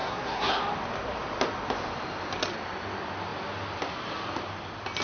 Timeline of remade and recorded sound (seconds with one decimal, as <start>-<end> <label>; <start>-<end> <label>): 0.0-0.6 remade; 0.6-5.0 recorded